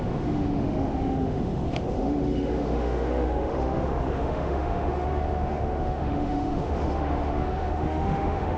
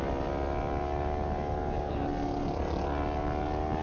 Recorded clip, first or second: second